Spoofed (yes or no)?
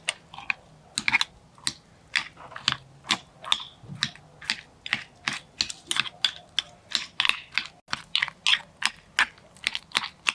no